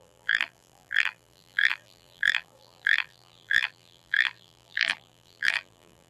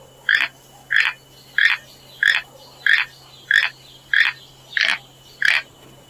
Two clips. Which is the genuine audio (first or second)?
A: second